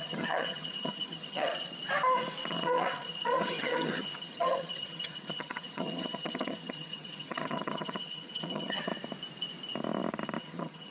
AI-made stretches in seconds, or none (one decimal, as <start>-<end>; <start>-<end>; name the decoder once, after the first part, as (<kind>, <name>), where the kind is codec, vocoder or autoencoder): 0.0-1.5 (vocoder, HiFi-GAN); 2.5-8.9; 10.4-10.9